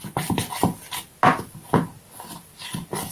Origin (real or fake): real